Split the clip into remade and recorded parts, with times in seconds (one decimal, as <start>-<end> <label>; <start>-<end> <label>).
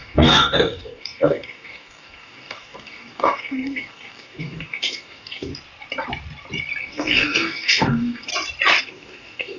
0.0-5.5 remade; 5.5-6.8 recorded; 6.8-8.3 remade; 8.3-8.8 recorded; 8.8-9.6 remade